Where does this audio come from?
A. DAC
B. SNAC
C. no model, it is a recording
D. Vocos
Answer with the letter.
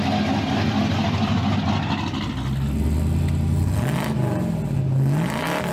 C